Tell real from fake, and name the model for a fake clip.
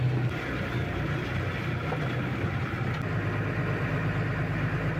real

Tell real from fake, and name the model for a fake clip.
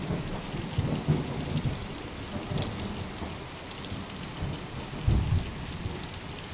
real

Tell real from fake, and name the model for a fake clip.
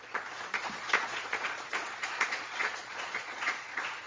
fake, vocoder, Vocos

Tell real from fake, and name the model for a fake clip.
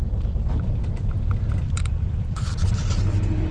fake, vocoder, BigVGAN v2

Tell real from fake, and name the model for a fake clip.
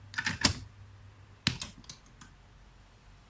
real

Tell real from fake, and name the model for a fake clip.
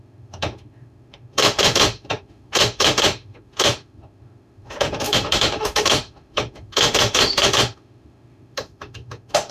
fake, autoencoder, DAC-VAE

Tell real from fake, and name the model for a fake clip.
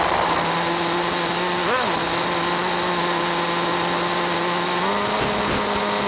real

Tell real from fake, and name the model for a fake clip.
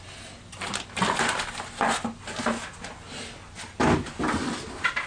real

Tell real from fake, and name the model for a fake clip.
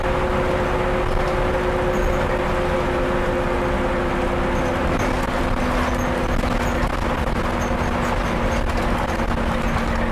real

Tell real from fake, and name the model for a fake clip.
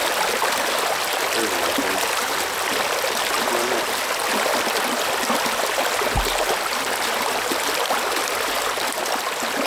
real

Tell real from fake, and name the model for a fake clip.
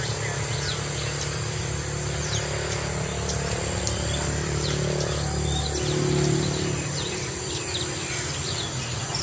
fake, vocoder, BigVGAN v2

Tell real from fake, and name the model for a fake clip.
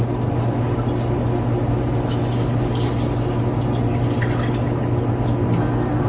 real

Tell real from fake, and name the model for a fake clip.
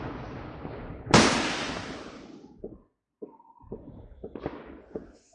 real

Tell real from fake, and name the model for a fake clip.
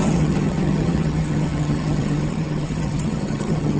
fake, vocoder, HiFi-GAN